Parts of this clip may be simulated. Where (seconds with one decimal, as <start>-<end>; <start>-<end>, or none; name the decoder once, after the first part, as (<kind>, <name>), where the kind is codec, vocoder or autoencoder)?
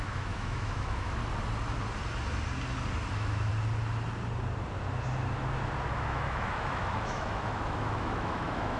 0.0-1.2 (autoencoder, DAC-VAE); 3.1-3.5; 5.9-8.8